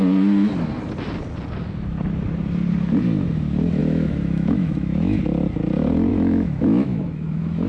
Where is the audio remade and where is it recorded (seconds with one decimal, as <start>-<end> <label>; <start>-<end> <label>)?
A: 0.0-3.8 recorded; 3.8-5.2 remade; 5.2-6.1 recorded; 6.1-7.7 remade